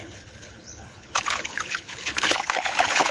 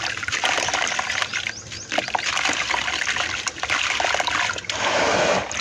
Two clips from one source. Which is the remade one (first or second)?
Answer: first